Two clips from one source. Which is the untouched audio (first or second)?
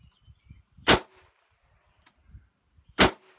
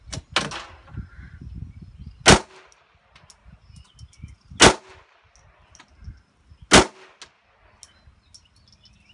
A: second